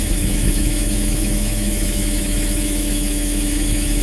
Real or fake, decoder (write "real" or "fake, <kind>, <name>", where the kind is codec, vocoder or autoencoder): fake, autoencoder, DAC-VAE